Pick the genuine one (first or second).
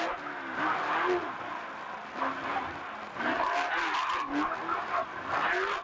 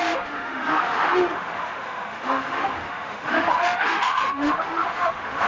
first